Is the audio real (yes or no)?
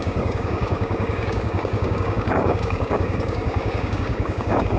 no